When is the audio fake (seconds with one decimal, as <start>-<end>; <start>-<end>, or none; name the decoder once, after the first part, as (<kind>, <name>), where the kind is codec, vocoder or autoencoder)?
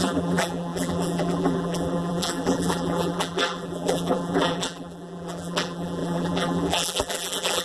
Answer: 0.0-7.6 (vocoder, BigVGAN v2)